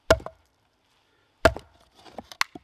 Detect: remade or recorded recorded